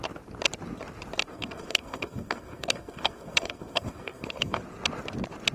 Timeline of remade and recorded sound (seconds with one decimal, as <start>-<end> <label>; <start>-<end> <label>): 0.0-1.3 recorded; 1.3-4.6 remade; 4.6-5.5 recorded